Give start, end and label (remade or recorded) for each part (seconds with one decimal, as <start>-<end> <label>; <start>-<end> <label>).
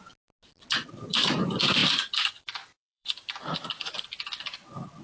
0.0-1.8 recorded; 1.8-3.4 remade; 3.4-5.0 recorded